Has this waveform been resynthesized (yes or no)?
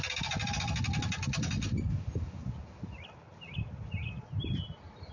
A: no